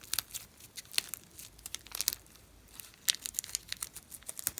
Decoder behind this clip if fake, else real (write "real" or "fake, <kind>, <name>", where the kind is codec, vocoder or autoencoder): real